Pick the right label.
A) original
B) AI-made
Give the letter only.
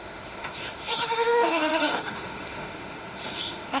B